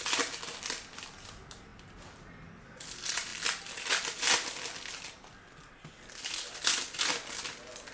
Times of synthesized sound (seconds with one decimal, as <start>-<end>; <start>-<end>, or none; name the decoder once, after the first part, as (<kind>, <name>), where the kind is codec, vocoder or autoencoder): none